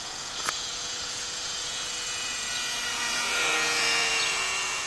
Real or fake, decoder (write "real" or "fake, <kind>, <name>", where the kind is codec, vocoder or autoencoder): fake, vocoder, Vocos